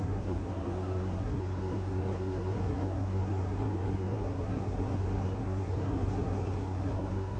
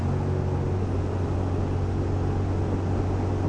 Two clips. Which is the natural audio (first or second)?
second